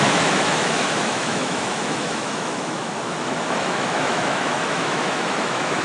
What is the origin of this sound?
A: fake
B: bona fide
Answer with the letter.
A